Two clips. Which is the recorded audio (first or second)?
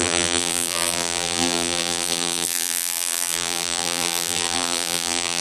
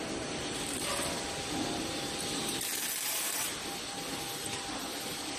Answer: second